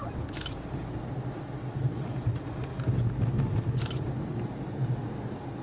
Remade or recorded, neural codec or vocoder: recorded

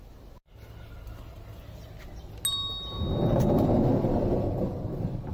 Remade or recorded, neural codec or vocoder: recorded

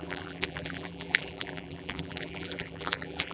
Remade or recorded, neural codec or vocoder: remade, vocoder, BigVGAN v2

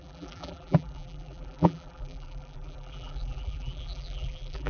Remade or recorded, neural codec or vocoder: remade, vocoder, BigVGAN v2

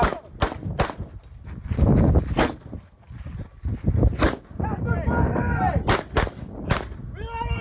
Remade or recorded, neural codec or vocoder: recorded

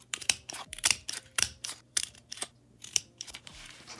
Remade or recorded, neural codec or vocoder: remade, vocoder, BigVGAN v2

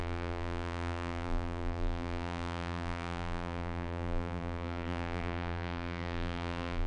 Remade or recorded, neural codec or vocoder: remade, vocoder, BigVGAN v2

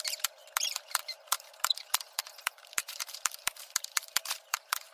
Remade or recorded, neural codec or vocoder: remade, vocoder, BigVGAN v2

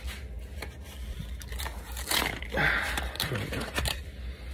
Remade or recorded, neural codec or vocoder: recorded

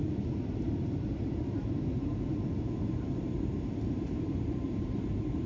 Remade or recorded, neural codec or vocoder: remade, vocoder, BigVGAN v2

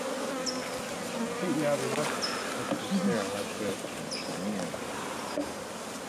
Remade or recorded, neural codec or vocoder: recorded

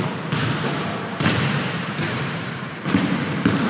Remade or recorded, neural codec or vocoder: remade, vocoder, BigVGAN v2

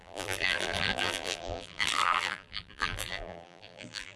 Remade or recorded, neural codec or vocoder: remade, vocoder, BigVGAN v2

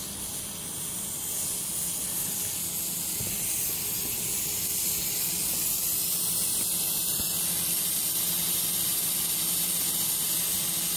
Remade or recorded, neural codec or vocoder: recorded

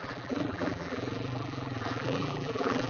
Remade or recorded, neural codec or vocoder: remade, vocoder, BigVGAN v2